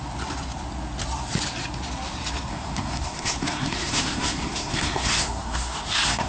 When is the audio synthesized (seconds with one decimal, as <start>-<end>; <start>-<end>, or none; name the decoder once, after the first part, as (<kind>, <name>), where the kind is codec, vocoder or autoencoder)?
2.5-6.3 (codec, SNAC)